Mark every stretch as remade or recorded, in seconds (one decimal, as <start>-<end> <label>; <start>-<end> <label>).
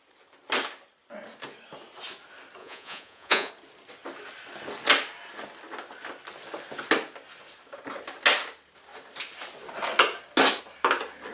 0.0-2.6 recorded; 2.6-3.5 remade; 3.5-11.3 recorded